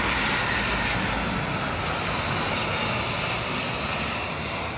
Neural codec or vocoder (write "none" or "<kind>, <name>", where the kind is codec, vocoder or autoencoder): none